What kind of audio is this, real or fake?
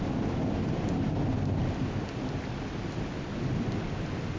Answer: real